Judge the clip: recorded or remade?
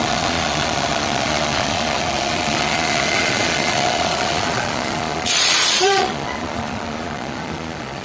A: remade